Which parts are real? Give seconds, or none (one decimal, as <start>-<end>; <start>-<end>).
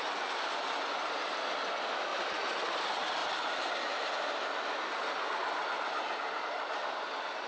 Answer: 0.0-7.5